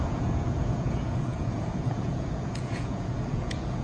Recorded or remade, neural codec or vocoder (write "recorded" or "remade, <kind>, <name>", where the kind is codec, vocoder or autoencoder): remade, vocoder, Vocos